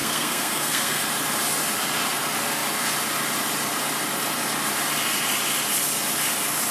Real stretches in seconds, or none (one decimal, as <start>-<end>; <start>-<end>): 1.0-6.7